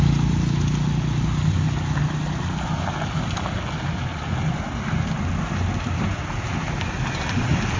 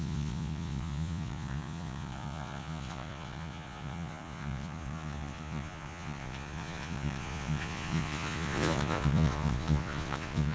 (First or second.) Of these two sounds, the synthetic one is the second